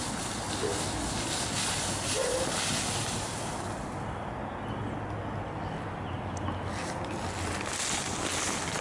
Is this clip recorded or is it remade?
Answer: recorded